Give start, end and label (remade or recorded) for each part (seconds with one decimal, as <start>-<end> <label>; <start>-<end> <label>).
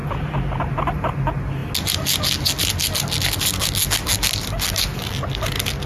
0.0-5.9 recorded